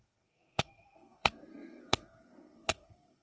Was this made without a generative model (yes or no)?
no